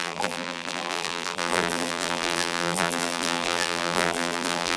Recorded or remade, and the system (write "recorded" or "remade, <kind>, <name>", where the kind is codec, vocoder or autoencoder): remade, vocoder, BigVGAN v2